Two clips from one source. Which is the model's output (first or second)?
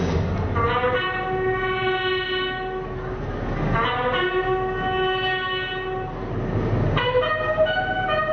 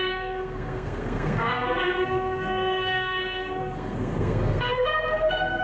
second